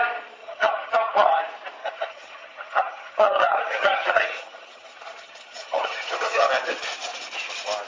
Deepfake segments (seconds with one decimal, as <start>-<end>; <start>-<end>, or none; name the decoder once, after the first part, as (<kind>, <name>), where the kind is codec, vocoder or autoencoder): 0.4-1.4 (vocoder, HiFi-GAN); 1.8-6.5